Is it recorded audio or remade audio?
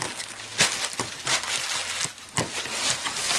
recorded